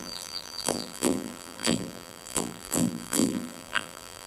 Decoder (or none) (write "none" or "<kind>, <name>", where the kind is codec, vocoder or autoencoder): vocoder, BigVGAN v2